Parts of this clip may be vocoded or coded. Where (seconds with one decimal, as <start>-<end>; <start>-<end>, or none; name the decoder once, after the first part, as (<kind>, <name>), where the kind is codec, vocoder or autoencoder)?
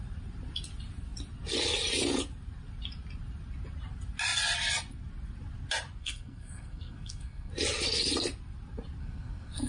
6.0-7.5 (codec, SNAC); 9.0-9.7